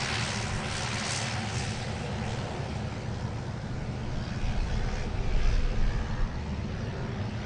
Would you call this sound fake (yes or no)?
no